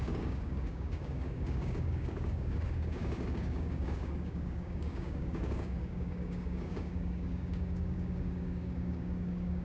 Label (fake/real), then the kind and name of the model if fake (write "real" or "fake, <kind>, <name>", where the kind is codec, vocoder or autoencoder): fake, codec, DAC